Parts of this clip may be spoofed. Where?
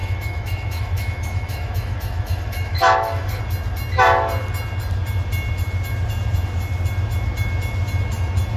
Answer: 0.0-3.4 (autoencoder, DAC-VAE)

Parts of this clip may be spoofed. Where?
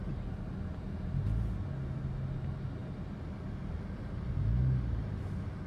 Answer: none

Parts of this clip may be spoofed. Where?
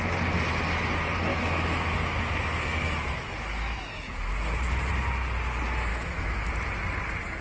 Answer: 1.3-4.9 (autoencoder, DAC-VAE); 5.9-6.5